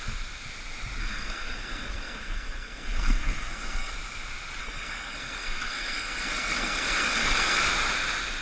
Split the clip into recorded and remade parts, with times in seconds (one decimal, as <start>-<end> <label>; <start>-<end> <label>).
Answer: 0.0-1.0 recorded; 1.0-3.9 remade; 3.9-4.6 recorded; 4.6-7.6 remade; 7.6-8.4 recorded